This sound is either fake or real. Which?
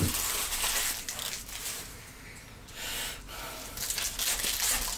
real